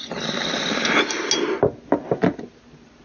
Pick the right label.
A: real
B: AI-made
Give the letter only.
A